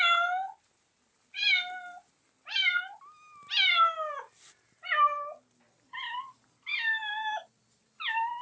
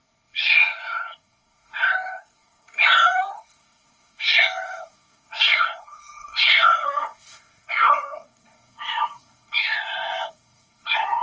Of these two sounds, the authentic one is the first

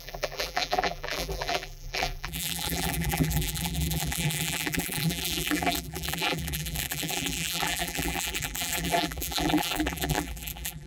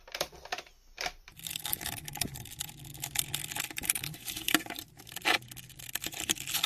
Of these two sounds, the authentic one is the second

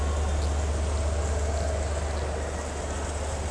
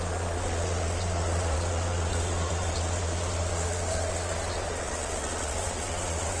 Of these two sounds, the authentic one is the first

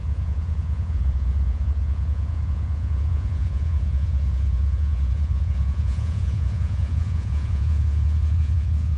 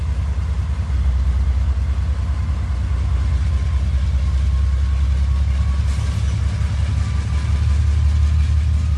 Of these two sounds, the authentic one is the second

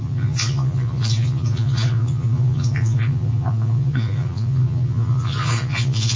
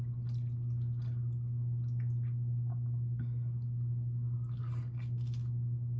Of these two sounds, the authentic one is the second